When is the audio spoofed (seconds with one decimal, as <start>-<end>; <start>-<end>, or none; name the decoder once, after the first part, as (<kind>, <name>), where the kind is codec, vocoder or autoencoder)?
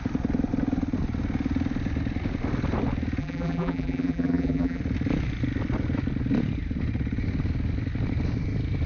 3.2-4.8 (vocoder, BigVGAN v2)